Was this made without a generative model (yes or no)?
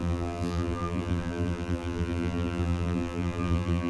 no